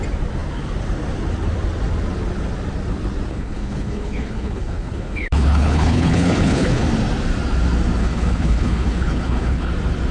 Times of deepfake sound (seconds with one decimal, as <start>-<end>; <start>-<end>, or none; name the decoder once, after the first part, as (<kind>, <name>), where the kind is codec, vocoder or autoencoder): 3.3-6.8 (codec, HILCodec); 8.0-9.7